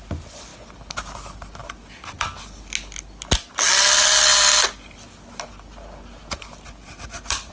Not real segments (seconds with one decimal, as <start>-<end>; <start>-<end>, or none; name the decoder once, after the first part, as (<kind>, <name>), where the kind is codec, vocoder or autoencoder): 6.8-7.5 (vocoder, BigVGAN v2)